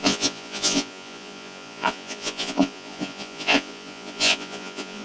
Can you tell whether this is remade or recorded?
remade